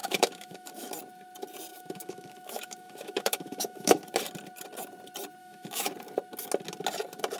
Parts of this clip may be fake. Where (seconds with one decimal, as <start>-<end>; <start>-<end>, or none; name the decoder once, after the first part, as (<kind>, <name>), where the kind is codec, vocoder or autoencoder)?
0.0-0.9 (autoencoder, DAC-VAE); 1.7-4.0; 5.4-5.9